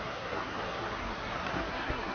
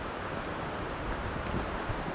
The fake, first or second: first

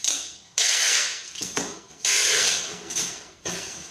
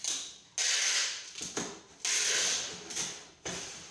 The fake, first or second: first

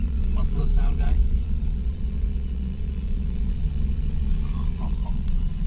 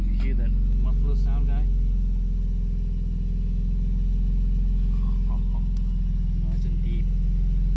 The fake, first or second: first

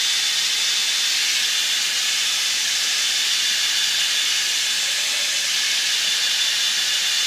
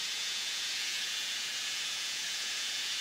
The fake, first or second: second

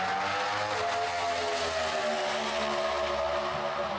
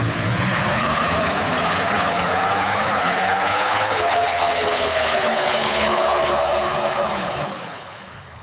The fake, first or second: second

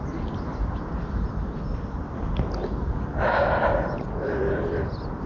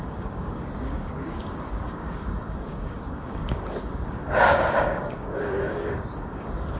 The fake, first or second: second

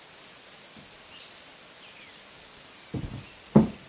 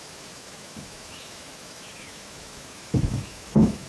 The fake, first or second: second